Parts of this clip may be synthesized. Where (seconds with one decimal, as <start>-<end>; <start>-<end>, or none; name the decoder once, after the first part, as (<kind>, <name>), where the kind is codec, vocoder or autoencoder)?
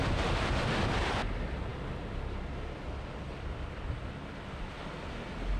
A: none